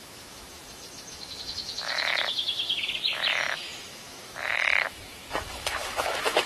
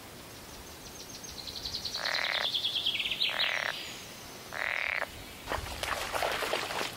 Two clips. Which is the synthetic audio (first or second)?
first